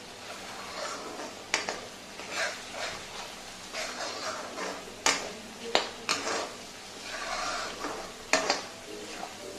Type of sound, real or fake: real